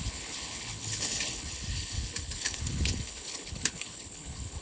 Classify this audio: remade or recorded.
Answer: remade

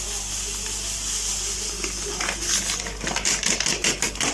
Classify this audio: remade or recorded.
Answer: recorded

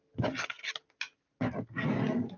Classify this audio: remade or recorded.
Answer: recorded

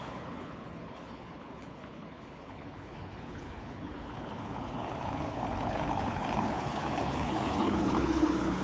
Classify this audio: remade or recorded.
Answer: remade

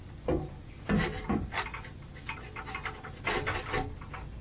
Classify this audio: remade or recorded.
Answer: recorded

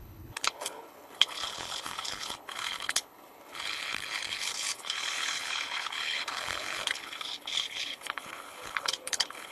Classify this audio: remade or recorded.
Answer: remade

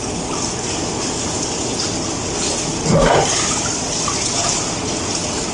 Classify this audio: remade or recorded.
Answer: recorded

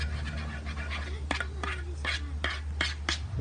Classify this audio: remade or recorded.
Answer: recorded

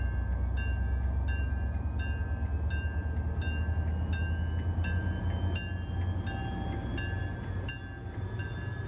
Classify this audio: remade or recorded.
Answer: recorded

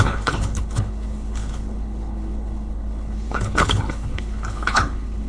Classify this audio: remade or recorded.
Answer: remade